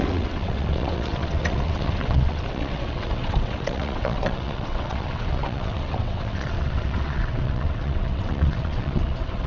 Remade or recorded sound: remade